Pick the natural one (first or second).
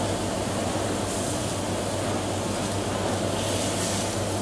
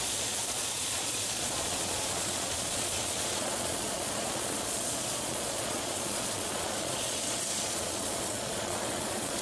first